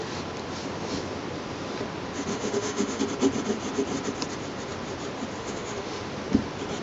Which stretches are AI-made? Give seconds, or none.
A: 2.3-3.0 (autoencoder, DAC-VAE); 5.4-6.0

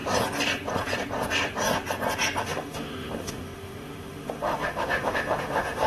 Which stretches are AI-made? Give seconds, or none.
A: 2.4-5.9 (autoencoder, DAC-VAE)

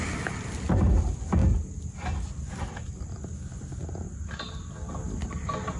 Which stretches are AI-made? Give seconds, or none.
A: none

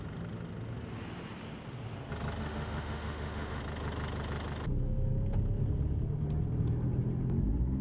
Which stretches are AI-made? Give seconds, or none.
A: 2.4-3.6 (autoencoder, DAC-VAE)

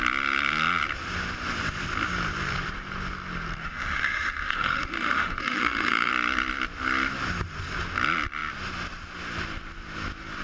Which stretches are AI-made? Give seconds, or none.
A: 3.6-6.1 (autoencoder, DAC-VAE)

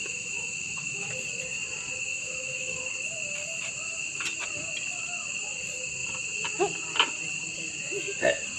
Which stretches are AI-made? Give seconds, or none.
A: 0.0-1.1 (autoencoder, DAC-VAE); 2.1-2.8